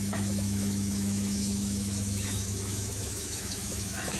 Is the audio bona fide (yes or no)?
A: no